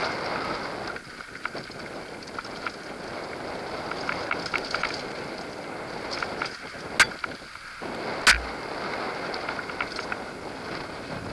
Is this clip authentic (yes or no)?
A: yes